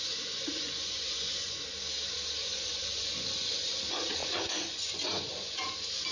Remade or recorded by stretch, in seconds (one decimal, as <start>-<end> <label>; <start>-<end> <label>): 0.0-1.6 remade; 1.6-2.4 recorded; 2.4-6.1 remade